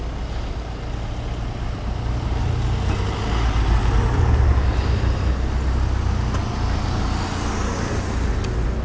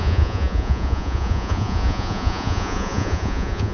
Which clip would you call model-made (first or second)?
second